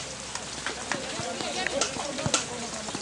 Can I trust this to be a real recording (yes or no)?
yes